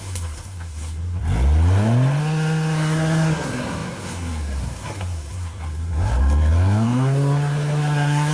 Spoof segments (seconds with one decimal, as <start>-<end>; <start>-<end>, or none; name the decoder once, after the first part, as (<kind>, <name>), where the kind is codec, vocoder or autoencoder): 0.0-1.2 (codec, SNAC); 2.2-8.3